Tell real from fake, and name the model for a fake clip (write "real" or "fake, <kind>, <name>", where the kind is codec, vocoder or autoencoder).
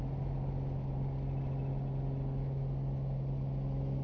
real